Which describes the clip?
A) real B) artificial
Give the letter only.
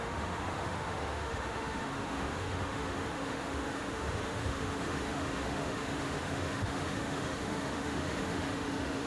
B